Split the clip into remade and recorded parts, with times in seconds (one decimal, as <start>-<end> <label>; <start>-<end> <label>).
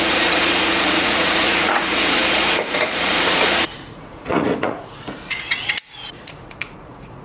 0.0-7.2 remade